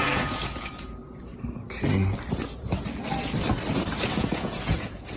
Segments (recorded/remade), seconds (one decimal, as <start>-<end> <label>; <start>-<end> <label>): 0.0-1.0 remade; 1.0-4.1 recorded; 4.1-5.2 remade